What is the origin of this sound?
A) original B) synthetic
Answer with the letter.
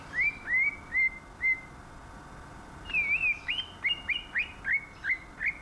A